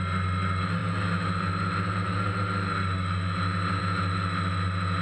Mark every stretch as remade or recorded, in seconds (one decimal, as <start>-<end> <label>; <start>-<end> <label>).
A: 0.0-5.0 recorded

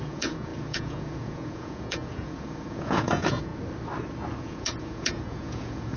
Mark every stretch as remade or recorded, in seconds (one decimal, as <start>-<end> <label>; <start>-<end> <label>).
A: 0.0-3.5 remade; 3.5-4.4 recorded; 4.4-6.0 remade

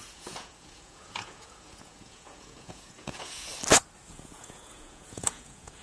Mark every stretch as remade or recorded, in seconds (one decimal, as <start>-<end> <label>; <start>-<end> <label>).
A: 0.0-3.5 remade; 3.5-4.1 recorded; 4.1-5.8 remade

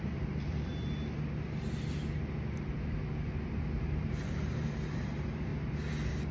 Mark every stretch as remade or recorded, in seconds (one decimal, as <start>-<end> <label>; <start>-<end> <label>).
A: 0.0-0.7 remade; 0.7-3.8 recorded; 3.8-5.5 remade; 5.5-6.3 recorded

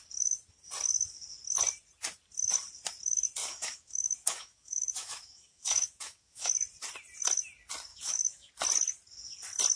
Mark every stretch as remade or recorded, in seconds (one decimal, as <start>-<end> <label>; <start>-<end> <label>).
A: 0.0-3.4 recorded; 3.4-6.5 remade; 6.5-7.9 recorded; 7.9-8.5 remade; 8.5-9.8 recorded

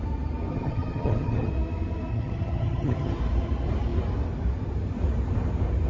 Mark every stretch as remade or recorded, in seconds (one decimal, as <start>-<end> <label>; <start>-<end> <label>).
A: 0.0-0.5 recorded; 0.5-1.5 remade; 1.5-2.1 recorded; 2.1-3.1 remade; 3.1-5.9 recorded